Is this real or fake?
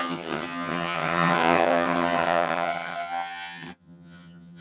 fake